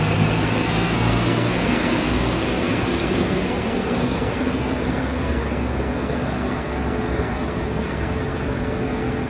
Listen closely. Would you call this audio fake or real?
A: fake